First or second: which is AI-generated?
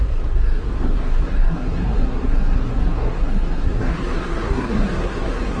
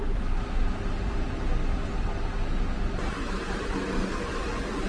first